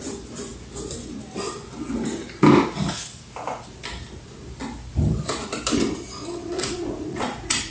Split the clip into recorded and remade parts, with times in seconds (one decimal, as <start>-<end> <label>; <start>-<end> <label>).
0.0-6.4 recorded; 6.4-7.7 remade